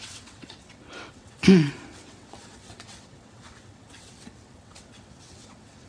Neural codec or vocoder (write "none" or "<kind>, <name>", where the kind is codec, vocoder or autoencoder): vocoder, WaveNeXt